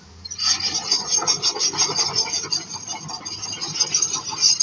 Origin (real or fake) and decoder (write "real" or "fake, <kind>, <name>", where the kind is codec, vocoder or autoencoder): real